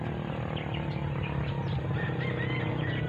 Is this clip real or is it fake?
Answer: real